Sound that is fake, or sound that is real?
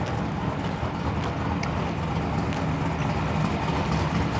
real